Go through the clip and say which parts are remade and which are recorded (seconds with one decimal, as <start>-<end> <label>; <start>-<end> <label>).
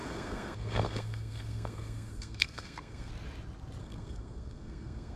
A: 0.0-3.1 remade; 3.1-3.8 recorded; 3.8-5.2 remade